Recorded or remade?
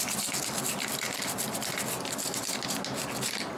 recorded